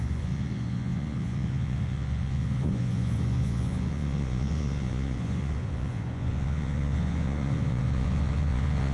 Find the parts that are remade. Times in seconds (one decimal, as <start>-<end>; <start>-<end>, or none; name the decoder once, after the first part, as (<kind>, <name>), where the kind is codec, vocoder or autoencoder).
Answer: 0.0-8.9 (vocoder, Vocos)